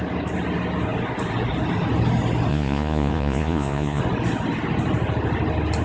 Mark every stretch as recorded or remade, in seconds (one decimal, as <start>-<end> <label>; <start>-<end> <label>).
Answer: 0.0-2.5 recorded; 2.5-4.0 remade; 4.0-5.8 recorded